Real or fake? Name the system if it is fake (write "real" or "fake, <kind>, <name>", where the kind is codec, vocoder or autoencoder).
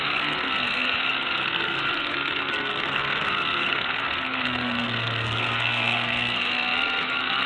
fake, codec, SNAC